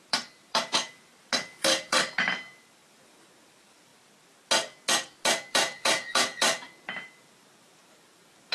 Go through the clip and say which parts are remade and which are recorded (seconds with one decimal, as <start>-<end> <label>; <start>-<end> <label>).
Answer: 0.0-0.9 remade; 0.9-1.6 recorded; 1.6-3.9 remade; 3.9-5.5 recorded; 5.5-8.5 remade